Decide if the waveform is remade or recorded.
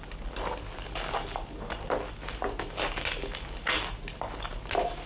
recorded